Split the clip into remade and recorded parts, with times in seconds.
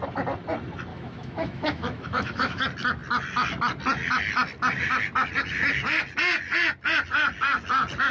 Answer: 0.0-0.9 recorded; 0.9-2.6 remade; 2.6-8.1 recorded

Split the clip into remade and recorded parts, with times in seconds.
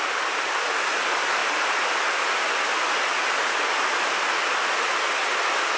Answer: 0.0-5.8 recorded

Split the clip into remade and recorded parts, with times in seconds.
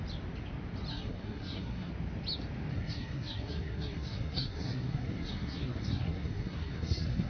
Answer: 0.0-0.9 recorded; 0.9-1.9 remade; 1.9-2.7 recorded; 2.7-7.3 remade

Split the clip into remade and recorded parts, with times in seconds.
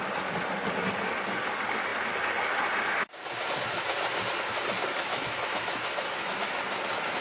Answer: 0.0-5.1 recorded; 5.1-6.6 remade; 6.6-7.2 recorded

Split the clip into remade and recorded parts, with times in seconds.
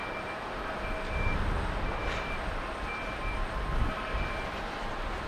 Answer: 0.0-5.3 recorded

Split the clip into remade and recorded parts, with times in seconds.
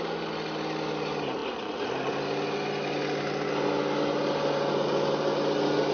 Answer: 0.0-5.9 recorded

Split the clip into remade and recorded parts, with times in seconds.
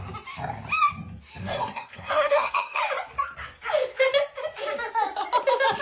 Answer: 0.0-1.4 recorded; 1.4-2.8 remade; 2.8-5.8 recorded